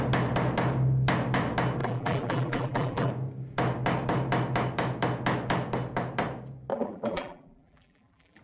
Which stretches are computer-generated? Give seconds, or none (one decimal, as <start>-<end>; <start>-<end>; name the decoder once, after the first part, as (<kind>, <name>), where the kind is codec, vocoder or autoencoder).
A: 1.8-3.1 (vocoder, BigVGAN v2); 6.7-8.4